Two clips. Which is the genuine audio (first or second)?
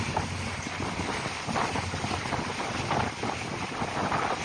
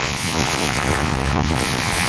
first